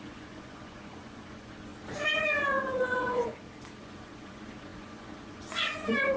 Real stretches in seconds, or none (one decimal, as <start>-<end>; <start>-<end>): 1.7-2.5; 3.3-3.8